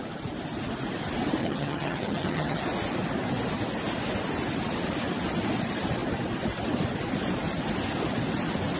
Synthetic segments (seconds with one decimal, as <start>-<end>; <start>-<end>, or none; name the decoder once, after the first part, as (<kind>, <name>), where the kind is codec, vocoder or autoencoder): 1.4-2.6 (vocoder, HiFi-GAN)